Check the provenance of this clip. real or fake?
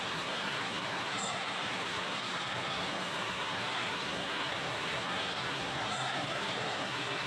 fake